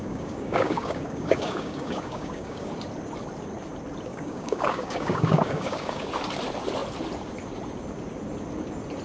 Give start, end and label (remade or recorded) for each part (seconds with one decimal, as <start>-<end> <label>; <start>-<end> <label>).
0.0-2.7 remade; 2.7-4.1 recorded; 4.1-6.1 remade; 6.1-9.0 recorded